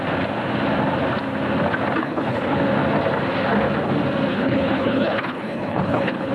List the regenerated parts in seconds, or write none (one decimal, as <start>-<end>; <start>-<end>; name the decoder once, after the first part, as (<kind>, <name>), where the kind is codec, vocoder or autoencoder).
2.0-2.6 (codec, HILCodec); 4.3-6.3